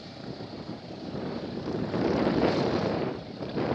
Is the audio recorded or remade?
remade